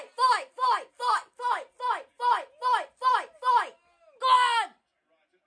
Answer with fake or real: real